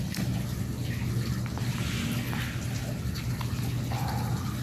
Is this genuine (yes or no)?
yes